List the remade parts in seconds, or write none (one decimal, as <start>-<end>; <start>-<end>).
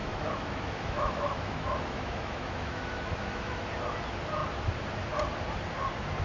0.0-3.7